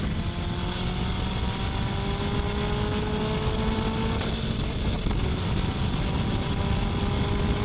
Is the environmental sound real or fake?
real